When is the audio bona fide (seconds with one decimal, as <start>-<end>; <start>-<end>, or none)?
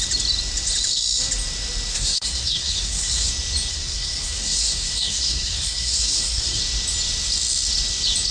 0.0-1.9; 3.3-3.7; 6.6-8.3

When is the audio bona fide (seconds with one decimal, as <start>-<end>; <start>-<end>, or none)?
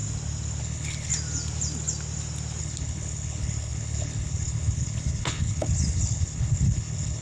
0.0-0.6; 1.1-2.6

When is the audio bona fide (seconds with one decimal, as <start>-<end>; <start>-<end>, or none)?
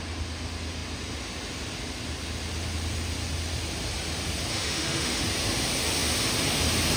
0.0-4.5; 5.2-7.0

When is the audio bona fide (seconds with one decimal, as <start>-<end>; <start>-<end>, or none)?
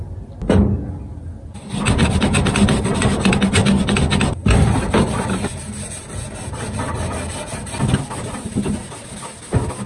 0.0-9.9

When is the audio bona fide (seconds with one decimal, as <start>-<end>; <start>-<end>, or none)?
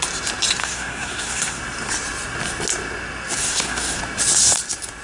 0.0-0.6; 1.6-3.4; 4.0-5.0